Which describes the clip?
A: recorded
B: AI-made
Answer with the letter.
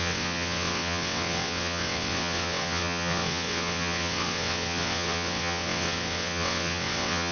B